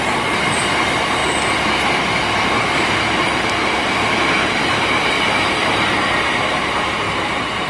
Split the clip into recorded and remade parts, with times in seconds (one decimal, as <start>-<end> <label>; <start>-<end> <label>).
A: 0.0-1.2 remade; 1.2-2.5 recorded; 2.5-7.7 remade